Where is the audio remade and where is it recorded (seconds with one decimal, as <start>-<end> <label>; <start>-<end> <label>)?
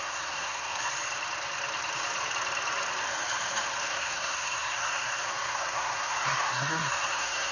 0.0-0.9 remade; 0.9-3.9 recorded; 3.9-7.5 remade